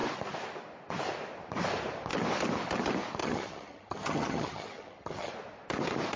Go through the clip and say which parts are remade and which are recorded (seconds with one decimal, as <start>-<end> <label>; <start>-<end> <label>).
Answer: 0.0-3.2 recorded; 3.2-5.3 remade; 5.3-6.2 recorded